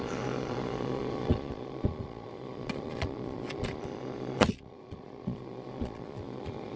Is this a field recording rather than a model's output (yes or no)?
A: no